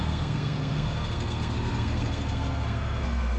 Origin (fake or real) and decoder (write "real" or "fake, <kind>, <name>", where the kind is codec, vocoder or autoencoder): fake, codec, SNAC